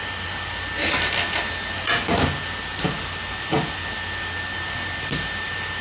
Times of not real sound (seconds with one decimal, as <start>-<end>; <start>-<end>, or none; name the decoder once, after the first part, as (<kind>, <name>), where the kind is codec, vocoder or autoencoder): none